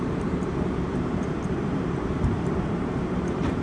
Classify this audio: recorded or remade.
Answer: remade